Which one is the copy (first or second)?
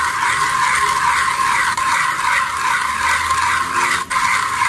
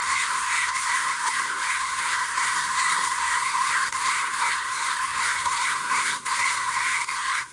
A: second